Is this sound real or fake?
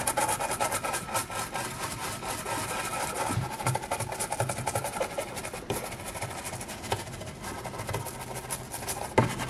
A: real